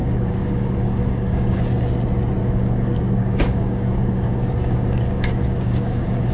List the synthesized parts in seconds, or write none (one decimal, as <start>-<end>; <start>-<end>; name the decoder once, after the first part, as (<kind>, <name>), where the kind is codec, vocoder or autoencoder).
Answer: 0.0-1.6 (codec, DAC); 2.4-6.3